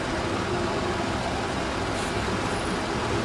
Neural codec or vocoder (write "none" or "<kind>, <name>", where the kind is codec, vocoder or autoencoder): none